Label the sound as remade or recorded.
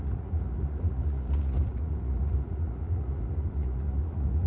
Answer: remade